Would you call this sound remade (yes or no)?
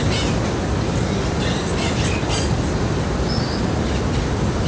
no